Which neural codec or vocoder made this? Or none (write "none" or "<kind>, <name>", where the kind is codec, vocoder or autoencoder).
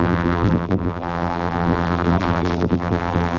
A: vocoder, BigVGAN v2